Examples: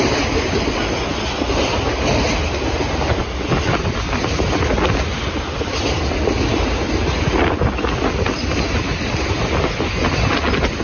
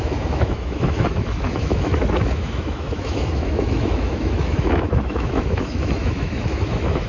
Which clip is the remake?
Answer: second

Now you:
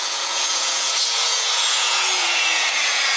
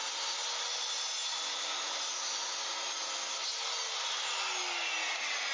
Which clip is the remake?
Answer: first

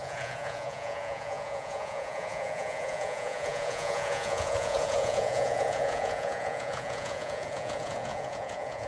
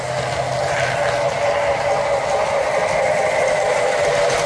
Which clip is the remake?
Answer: first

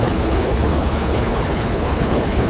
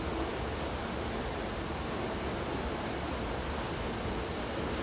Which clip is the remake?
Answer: first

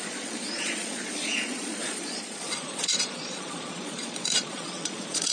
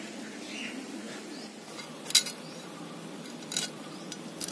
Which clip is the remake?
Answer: first